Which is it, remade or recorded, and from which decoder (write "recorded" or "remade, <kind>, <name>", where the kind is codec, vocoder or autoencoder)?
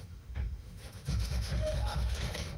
remade, autoencoder, DAC-VAE